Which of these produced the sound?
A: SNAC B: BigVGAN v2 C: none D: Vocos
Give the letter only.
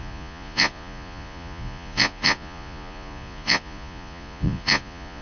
D